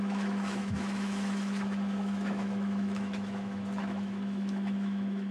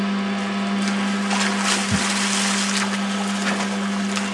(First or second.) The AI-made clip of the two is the first